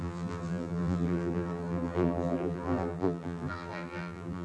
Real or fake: fake